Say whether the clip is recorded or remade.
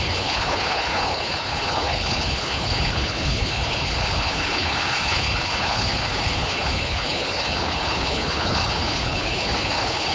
remade